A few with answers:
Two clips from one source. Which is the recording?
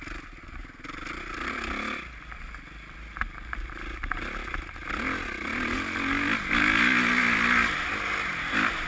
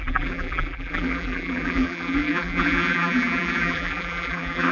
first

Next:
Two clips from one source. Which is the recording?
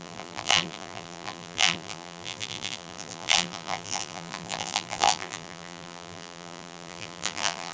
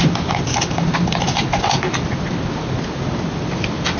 second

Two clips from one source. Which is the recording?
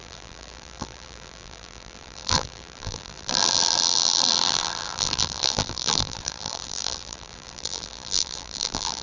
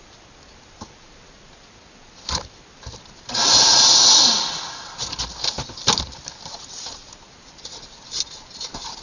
second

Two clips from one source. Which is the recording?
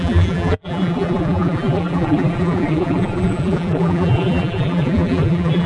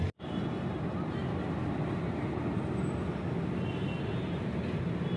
second